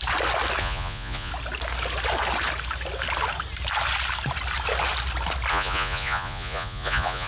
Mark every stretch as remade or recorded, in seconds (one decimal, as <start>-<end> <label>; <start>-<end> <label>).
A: 0.0-0.6 recorded; 0.6-1.3 remade; 1.3-5.5 recorded; 5.5-7.3 remade